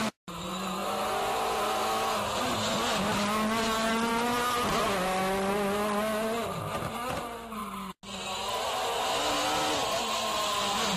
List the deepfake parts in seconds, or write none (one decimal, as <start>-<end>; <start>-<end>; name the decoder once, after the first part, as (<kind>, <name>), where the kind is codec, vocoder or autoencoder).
none